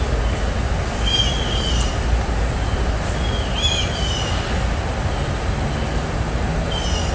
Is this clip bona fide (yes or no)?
yes